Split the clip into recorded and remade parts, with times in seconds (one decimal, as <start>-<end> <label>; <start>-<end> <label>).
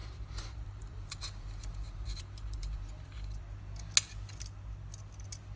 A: 0.0-3.4 remade; 3.4-5.6 recorded